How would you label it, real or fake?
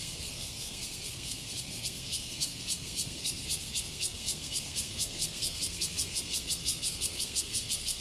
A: fake